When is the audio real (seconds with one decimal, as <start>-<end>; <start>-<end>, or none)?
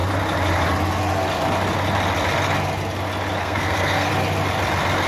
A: 0.0-3.4; 4.1-5.1